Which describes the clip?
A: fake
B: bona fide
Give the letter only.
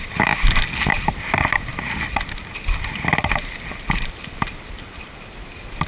A